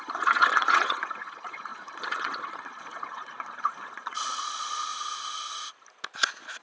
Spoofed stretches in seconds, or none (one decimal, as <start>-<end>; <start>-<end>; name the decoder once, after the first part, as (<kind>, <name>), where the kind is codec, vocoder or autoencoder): 0.0-4.9 (vocoder, Vocos)